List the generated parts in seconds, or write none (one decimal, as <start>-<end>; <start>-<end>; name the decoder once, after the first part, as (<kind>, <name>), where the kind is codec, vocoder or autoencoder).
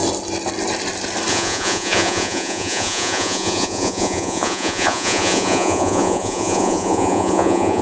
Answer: 1.3-7.8 (vocoder, Vocos)